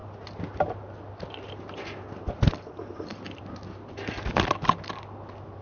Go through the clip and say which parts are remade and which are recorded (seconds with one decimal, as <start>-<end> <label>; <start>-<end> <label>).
0.0-5.6 recorded